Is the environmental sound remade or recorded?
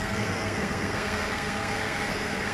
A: remade